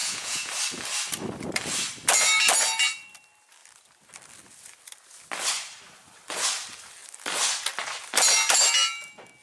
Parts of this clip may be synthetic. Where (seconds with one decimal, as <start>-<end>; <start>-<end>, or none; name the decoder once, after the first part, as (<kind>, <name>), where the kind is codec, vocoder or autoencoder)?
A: 0.0-0.5 (vocoder, Vocos)

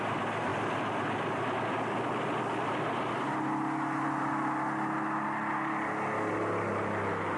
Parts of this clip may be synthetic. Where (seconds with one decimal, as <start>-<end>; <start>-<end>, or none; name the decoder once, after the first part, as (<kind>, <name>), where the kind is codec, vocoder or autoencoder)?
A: none

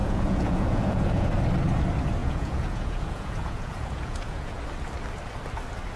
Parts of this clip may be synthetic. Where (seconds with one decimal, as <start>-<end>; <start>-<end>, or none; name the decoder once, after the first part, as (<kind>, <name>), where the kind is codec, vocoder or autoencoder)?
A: 0.0-1.3 (vocoder, Vocos); 2.2-4.6